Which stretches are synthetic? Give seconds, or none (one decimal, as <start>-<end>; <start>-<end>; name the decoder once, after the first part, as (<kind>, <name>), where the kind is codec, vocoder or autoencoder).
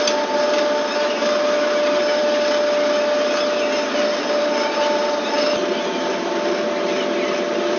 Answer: none